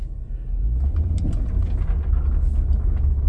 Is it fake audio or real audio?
real